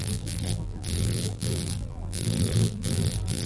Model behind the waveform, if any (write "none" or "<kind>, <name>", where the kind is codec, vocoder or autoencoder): vocoder, BigVGAN v2